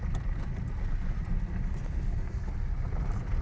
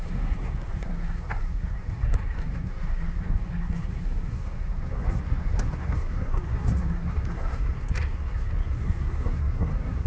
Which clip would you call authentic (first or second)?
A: first